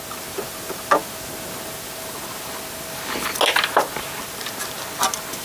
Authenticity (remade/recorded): recorded